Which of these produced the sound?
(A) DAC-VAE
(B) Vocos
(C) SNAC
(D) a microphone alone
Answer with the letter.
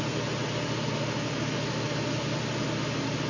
D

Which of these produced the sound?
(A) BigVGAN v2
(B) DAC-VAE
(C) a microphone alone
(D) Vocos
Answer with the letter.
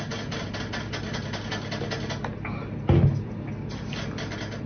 C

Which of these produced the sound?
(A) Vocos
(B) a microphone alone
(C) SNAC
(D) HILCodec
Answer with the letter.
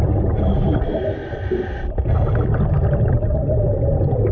B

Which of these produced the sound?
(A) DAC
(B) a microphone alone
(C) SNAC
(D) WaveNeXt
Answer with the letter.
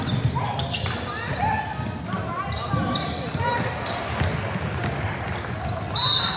B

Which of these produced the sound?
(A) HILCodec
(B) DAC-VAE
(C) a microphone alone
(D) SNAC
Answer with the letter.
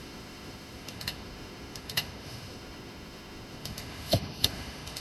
B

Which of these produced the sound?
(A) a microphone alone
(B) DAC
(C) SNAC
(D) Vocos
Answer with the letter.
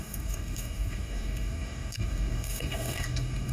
B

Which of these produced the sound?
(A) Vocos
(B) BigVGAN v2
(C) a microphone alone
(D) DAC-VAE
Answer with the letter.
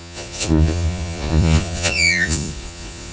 A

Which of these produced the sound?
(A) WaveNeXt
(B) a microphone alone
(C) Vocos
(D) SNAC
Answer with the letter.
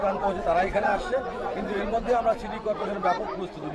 C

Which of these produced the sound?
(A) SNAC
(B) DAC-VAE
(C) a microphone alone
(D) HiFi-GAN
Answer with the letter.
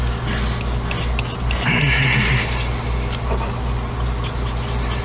C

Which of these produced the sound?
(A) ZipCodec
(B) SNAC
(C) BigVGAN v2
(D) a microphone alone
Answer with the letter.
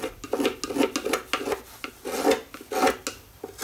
D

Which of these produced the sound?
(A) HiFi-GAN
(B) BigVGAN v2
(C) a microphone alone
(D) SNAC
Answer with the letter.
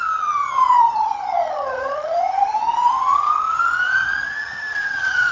A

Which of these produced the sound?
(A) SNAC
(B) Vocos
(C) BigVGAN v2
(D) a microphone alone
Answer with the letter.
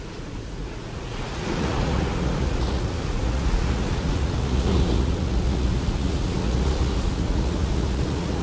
B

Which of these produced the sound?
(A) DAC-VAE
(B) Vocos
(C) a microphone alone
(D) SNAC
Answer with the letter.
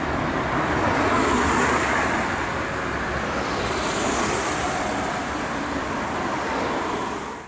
C